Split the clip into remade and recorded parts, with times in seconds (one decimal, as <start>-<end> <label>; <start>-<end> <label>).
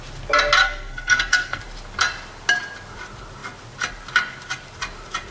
0.0-0.6 recorded; 0.6-1.6 remade; 1.6-5.3 recorded